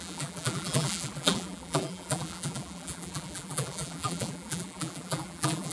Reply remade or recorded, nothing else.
remade